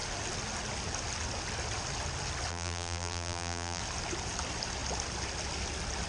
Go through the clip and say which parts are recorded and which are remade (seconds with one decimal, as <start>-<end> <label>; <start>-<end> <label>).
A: 0.0-2.5 recorded; 2.5-3.8 remade; 3.8-6.1 recorded